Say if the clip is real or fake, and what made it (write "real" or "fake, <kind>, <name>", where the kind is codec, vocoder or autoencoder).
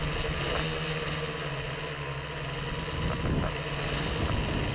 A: real